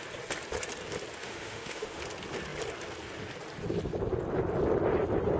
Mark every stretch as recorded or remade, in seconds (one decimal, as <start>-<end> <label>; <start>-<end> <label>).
0.0-1.2 recorded; 1.2-2.0 remade; 2.0-5.4 recorded